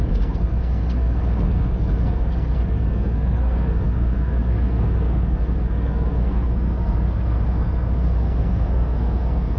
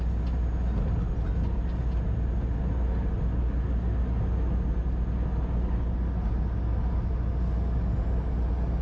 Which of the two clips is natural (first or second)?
second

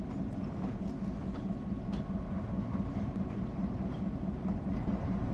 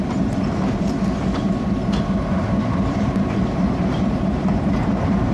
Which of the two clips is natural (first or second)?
first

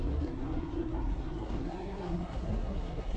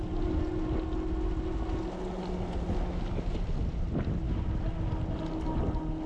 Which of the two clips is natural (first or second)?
second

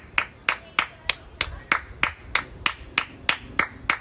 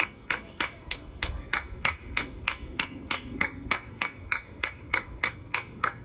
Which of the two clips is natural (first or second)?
first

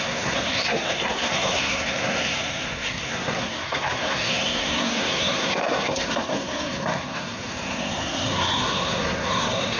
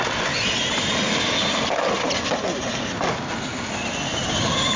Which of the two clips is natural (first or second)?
second